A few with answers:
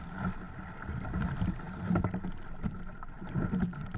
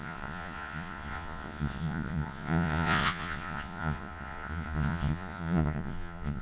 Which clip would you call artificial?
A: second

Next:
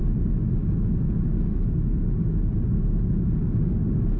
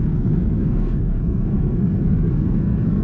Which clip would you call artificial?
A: second